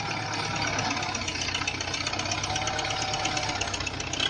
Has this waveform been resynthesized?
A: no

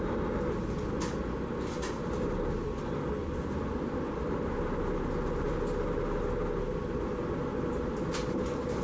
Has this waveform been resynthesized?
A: no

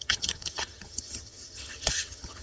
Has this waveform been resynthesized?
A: yes